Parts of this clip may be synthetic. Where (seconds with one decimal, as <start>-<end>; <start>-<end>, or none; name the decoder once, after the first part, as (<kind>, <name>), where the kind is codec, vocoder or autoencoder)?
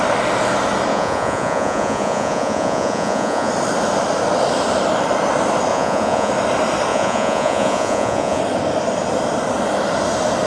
0.9-3.5 (vocoder, Vocos); 5.7-6.3; 6.9-8.4